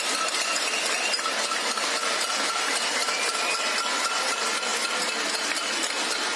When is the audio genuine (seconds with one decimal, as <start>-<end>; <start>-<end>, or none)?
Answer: 0.0-6.4